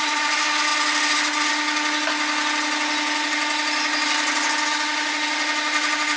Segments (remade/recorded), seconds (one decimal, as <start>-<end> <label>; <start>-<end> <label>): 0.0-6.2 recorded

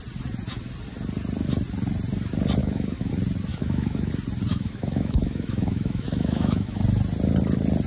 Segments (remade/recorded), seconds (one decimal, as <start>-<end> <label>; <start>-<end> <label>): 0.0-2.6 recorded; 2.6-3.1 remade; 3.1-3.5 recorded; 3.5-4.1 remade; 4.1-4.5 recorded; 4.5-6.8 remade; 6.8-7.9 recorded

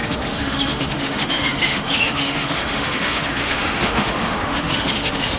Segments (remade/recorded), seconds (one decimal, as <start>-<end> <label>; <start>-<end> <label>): 0.0-5.4 remade